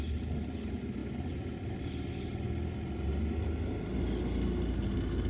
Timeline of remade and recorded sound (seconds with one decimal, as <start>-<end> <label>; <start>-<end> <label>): 0.0-5.3 recorded